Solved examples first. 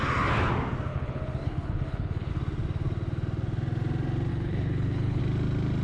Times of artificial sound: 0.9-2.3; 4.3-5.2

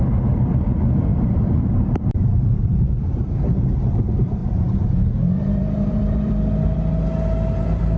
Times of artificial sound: 1.1-3.3; 4.4-6.3

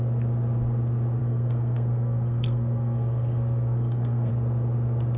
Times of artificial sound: 1.2-4.3

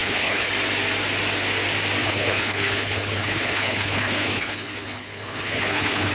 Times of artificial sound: 0.0-0.5; 2.0-6.1